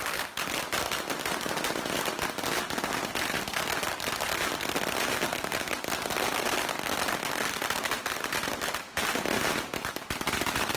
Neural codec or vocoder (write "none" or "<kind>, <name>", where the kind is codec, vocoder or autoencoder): none